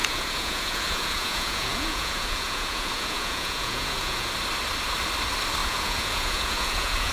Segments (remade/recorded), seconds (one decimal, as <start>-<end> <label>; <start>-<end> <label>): 0.0-4.3 remade; 4.3-5.6 recorded; 5.6-7.1 remade